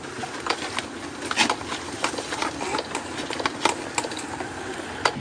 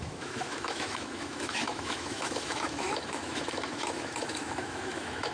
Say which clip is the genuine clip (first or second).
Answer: first